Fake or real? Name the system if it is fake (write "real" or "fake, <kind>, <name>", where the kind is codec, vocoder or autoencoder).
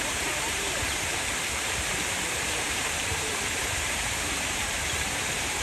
fake, vocoder, BigVGAN v2